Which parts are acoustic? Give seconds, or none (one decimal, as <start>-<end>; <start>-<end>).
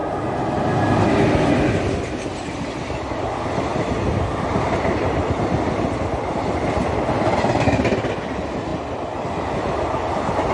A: 0.0-10.5